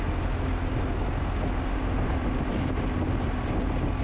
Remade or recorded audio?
recorded